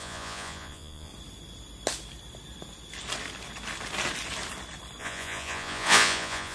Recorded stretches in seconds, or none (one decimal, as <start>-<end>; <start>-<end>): 1.1-5.0